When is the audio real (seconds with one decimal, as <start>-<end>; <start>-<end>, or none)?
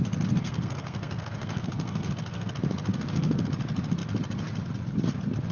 0.0-0.4; 2.5-2.9; 3.4-5.5